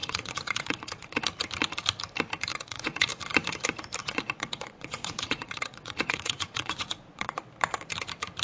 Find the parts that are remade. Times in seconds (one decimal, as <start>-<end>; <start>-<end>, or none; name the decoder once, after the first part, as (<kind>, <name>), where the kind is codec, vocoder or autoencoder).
0.0-1.2 (vocoder, Vocos); 2.5-3.1; 4.0-7.4